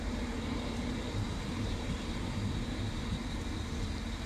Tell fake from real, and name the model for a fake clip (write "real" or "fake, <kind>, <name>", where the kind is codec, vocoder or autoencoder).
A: real